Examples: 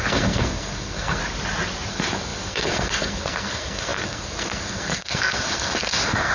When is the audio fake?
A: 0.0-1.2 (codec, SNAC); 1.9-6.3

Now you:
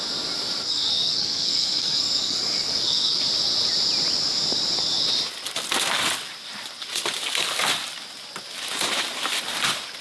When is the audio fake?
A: 0.7-3.2 (codec, SNAC)

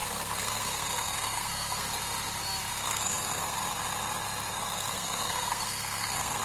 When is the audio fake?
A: 0.0-1.9 (codec, SNAC); 2.7-3.6; 4.5-6.4

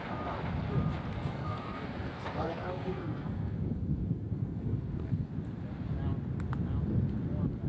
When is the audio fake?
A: 1.1-5.3 (codec, SNAC)

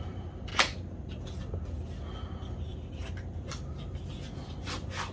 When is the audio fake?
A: none

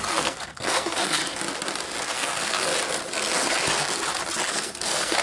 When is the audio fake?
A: 0.0-1.2 (codec, SNAC); 2.0-2.7; 4.5-5.2

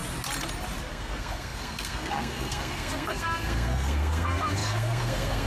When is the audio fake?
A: 0.9-5.5 (codec, SNAC)

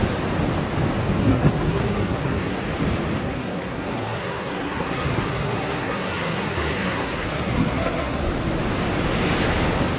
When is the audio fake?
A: 1.2-2.6 (codec, SNAC); 3.2-8.2